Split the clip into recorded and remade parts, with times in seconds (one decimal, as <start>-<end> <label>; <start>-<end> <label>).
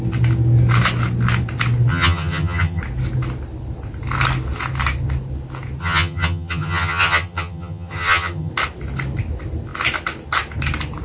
0.0-1.9 recorded; 1.9-2.8 remade; 2.8-5.8 recorded; 5.8-8.5 remade; 8.5-11.0 recorded